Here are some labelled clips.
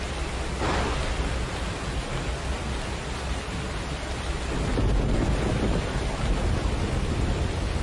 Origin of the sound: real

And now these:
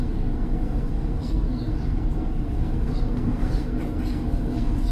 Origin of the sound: fake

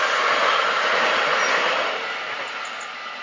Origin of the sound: real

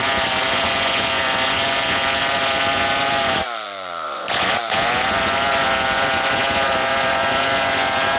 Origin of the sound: fake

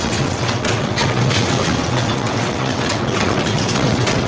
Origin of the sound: fake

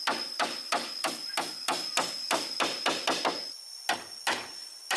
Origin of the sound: real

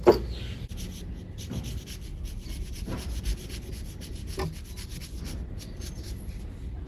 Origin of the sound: real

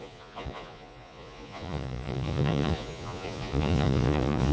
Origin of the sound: fake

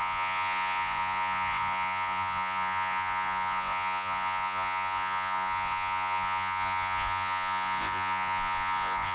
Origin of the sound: fake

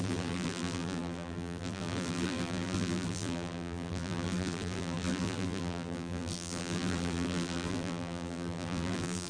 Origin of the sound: fake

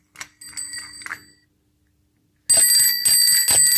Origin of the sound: real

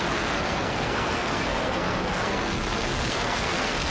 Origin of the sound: fake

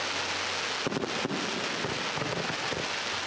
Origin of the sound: real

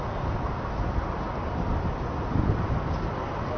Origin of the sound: real